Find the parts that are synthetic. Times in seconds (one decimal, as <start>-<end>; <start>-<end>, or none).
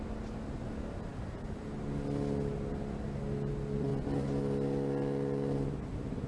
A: none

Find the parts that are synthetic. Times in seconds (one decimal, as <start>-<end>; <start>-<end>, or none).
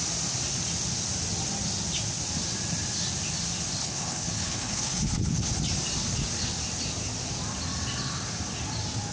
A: 3.8-5.5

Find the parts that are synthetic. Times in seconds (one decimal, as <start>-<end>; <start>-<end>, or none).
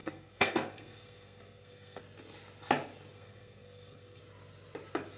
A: 0.0-2.0; 3.1-4.2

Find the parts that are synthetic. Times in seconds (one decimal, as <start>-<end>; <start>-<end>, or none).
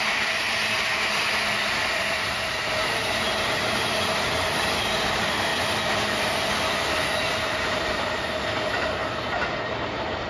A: none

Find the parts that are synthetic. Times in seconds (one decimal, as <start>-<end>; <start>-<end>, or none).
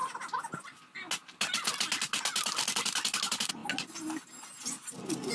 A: none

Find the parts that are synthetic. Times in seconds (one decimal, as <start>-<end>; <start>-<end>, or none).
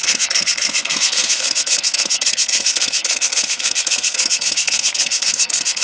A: 0.0-5.8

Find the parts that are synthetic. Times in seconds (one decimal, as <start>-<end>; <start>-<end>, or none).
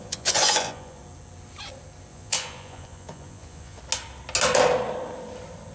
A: 0.0-1.0; 2.1-3.8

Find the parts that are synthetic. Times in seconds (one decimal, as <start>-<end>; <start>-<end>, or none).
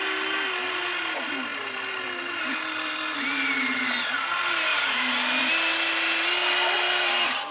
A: none